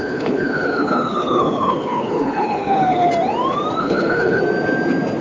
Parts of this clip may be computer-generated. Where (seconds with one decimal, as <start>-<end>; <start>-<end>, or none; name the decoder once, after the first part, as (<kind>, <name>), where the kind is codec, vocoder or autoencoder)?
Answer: 0.0-3.1 (codec, HILCodec); 3.8-4.4